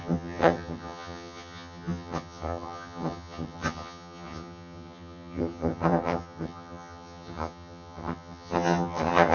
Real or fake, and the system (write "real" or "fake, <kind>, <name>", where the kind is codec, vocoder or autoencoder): fake, vocoder, HiFi-GAN